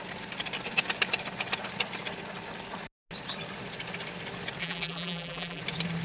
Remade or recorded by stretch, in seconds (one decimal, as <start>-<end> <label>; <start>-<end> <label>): 0.0-4.6 recorded; 4.6-5.6 remade; 5.6-6.0 recorded